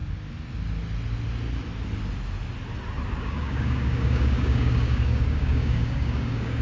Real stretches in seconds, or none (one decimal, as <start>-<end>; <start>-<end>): 0.0-3.2